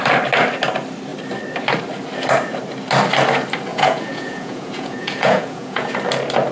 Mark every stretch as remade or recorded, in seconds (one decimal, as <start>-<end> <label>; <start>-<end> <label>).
0.0-3.7 recorded; 3.7-5.9 remade; 5.9-6.5 recorded